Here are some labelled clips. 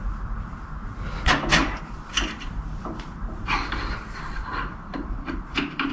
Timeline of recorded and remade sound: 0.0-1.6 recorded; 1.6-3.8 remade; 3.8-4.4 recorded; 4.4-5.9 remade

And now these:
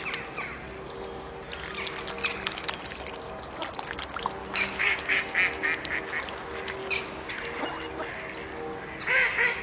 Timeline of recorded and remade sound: 0.0-4.4 recorded; 4.4-5.2 remade; 5.2-6.8 recorded; 6.8-7.3 remade; 7.3-9.6 recorded

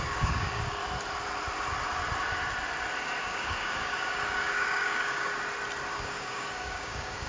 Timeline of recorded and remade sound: 0.0-0.8 remade; 0.8-3.2 recorded; 3.2-5.3 remade; 5.3-5.9 recorded; 5.9-7.3 remade

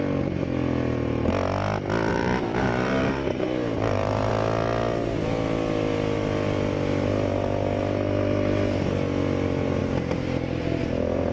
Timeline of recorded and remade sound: 0.0-2.1 recorded; 2.1-4.3 remade; 4.3-11.3 recorded

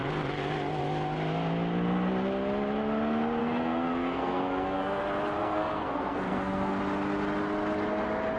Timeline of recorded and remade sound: 0.0-3.4 recorded; 3.4-5.0 remade; 5.0-5.4 recorded; 5.4-6.8 remade; 6.8-8.4 recorded

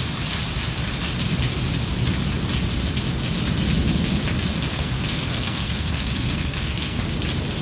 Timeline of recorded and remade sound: 0.0-4.7 recorded; 4.7-7.0 remade; 7.0-7.6 recorded